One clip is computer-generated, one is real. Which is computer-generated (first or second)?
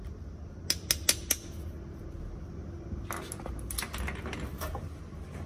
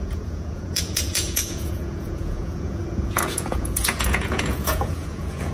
second